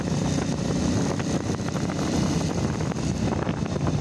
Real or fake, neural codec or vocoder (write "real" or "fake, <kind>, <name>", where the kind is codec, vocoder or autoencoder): real